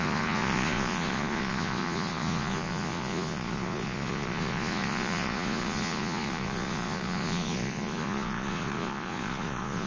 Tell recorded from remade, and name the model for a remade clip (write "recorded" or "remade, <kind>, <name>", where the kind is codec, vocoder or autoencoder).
remade, vocoder, Vocos